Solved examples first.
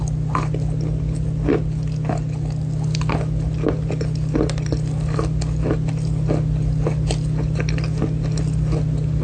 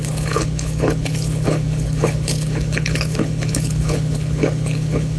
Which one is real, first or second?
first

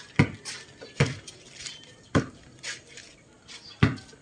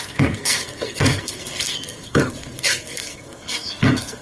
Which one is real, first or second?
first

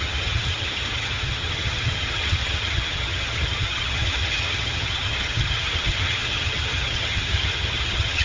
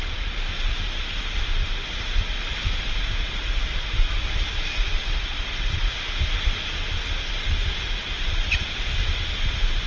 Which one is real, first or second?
second